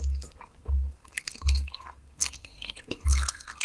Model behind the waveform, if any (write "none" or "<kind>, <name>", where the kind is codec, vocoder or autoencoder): codec, SNAC